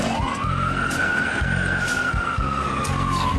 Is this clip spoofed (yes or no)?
yes